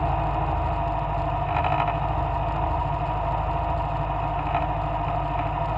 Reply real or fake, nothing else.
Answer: real